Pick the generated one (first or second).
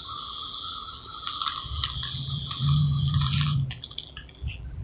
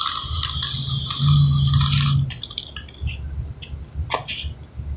first